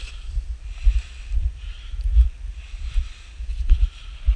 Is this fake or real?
real